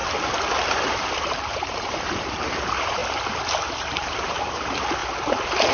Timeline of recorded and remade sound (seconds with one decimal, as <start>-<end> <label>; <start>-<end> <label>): 0.0-0.9 recorded; 0.9-3.0 remade; 3.0-3.8 recorded; 3.8-5.0 remade; 5.0-5.7 recorded